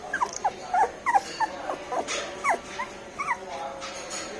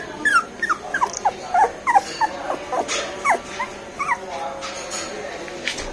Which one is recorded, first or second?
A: second